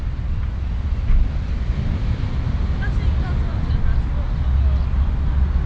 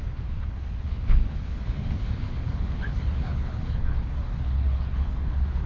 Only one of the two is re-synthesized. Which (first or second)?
second